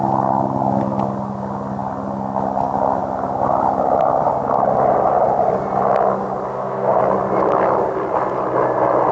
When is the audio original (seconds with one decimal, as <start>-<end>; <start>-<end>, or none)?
0.0-6.5; 7.0-9.1